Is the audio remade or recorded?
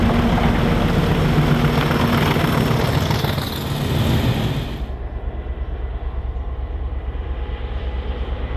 recorded